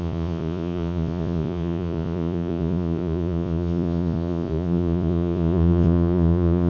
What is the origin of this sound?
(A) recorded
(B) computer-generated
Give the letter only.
B